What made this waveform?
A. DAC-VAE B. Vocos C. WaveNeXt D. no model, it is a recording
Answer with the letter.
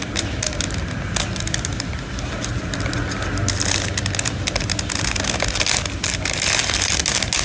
D